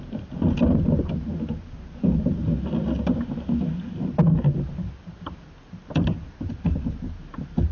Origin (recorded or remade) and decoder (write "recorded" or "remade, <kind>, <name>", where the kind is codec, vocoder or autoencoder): recorded